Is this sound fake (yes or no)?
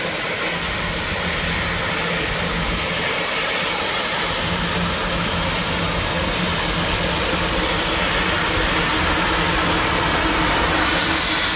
no